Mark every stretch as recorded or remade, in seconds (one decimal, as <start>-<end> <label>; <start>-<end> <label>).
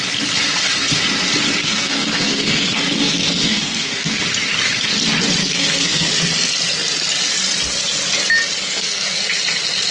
0.0-1.6 recorded; 1.6-4.2 remade; 4.2-5.4 recorded; 5.4-6.1 remade; 6.1-8.6 recorded; 8.6-9.2 remade; 9.2-9.9 recorded